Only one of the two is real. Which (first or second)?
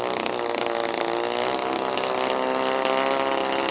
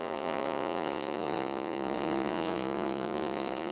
first